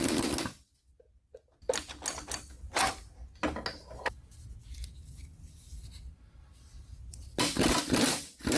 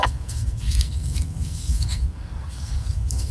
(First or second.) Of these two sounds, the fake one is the second